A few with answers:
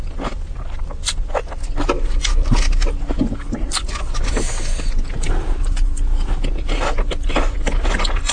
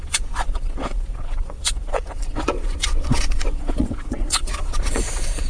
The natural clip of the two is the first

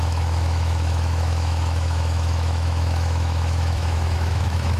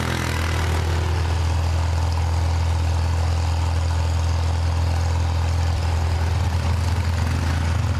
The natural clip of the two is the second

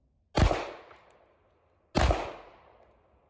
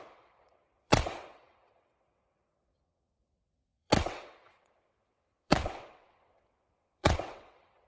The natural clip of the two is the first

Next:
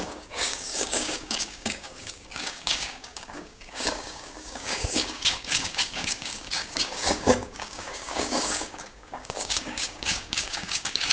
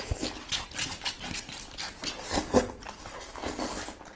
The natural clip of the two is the second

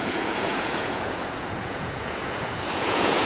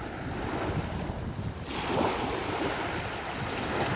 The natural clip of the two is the second